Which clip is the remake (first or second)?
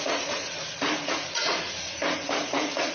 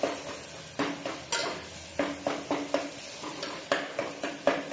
first